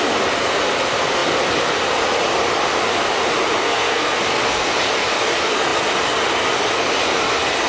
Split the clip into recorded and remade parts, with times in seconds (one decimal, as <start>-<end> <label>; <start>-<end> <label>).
0.0-3.6 recorded; 3.6-4.2 remade; 4.2-7.7 recorded